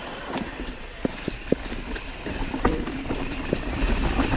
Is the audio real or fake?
fake